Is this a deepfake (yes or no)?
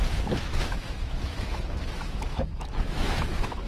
yes